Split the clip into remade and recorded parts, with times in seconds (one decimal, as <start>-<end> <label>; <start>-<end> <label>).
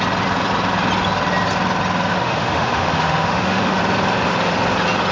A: 0.0-2.1 recorded; 2.1-3.8 remade; 3.8-5.1 recorded